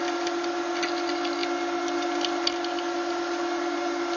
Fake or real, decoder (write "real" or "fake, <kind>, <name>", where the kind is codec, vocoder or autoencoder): real